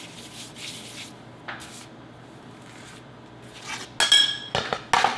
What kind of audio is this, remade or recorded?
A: recorded